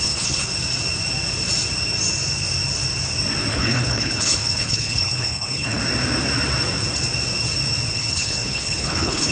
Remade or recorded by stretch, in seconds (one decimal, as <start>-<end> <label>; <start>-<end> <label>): 0.0-0.5 remade; 0.5-3.5 recorded; 3.5-5.8 remade; 5.8-7.9 recorded; 7.9-9.3 remade